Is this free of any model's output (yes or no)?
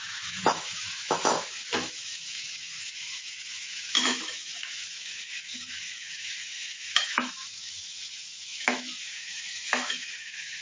no